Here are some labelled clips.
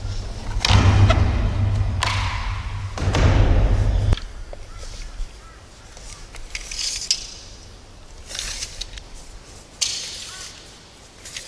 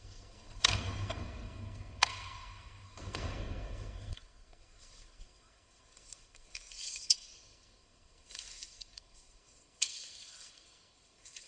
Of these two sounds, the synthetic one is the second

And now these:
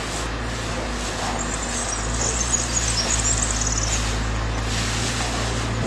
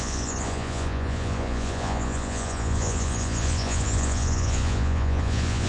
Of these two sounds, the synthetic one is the second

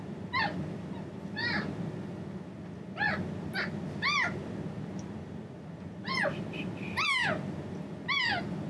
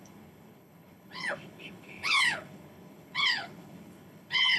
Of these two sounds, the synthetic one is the second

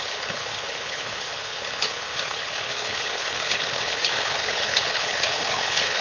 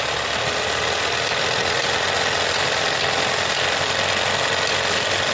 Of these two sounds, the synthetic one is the first